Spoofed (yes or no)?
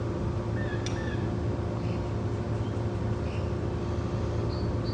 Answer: no